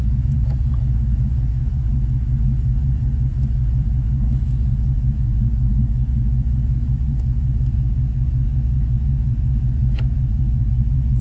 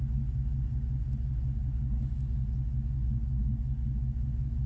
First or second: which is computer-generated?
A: first